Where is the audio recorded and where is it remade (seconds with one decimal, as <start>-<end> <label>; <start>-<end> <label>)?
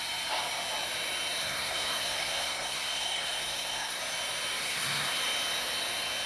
0.0-1.4 recorded; 1.4-4.0 remade; 4.0-4.6 recorded; 4.6-5.2 remade; 5.2-6.3 recorded